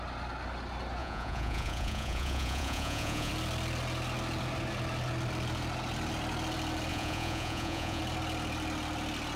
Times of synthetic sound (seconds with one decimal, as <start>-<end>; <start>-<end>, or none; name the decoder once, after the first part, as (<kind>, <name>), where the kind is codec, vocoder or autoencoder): 1.0-3.3 (vocoder, Vocos); 6.9-8.0